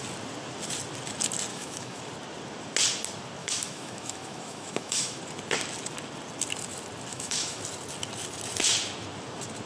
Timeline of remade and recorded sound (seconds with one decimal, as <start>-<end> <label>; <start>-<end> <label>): 0.0-1.5 recorded; 1.5-2.0 remade; 2.0-3.4 recorded; 3.4-5.2 remade; 5.2-7.1 recorded; 7.1-7.6 remade; 7.6-9.7 recorded